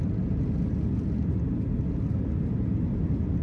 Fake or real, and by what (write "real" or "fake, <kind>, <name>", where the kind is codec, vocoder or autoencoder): real